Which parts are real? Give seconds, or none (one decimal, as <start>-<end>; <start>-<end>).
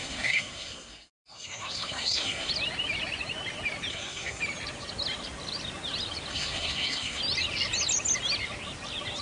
2.5-3.9; 4.4-6.3; 7.2-9.2